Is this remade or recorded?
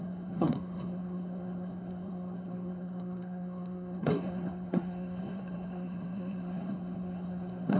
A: remade